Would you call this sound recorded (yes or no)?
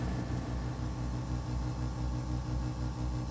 yes